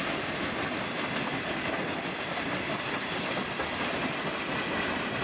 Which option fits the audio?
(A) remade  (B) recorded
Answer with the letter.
B